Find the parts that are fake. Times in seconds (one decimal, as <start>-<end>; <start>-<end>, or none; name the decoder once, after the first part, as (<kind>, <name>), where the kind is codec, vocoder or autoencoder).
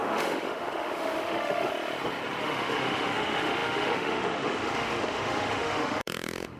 0.0-1.7 (autoencoder, DAC-VAE); 2.4-6.6